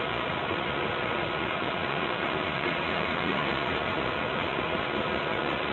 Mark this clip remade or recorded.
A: remade